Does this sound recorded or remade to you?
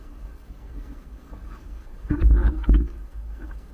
remade